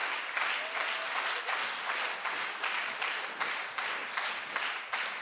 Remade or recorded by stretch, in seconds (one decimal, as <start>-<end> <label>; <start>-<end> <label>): 0.0-5.2 recorded